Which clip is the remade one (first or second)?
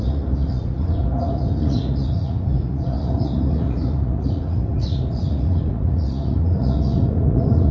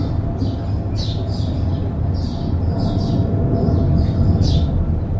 first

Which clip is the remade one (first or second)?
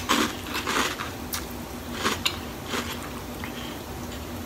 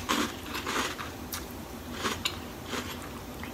second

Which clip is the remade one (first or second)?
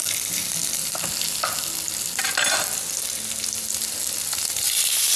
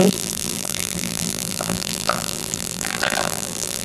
second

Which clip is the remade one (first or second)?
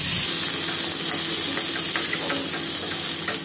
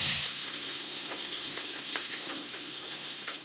second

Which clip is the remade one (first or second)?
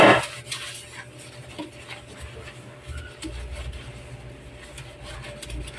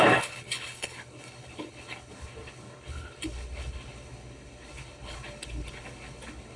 second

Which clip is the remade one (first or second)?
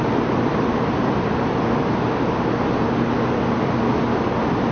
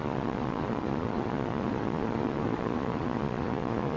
second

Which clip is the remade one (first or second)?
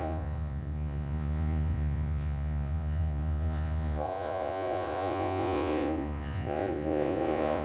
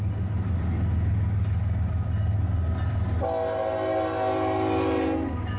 first